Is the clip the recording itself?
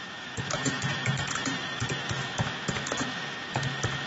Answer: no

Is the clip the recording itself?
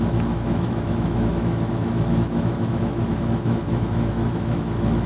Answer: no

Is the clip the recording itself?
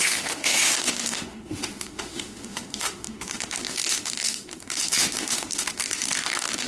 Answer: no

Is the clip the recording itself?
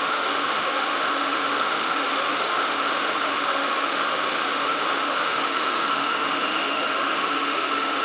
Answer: no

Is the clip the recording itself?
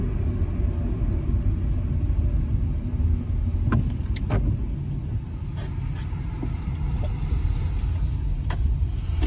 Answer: yes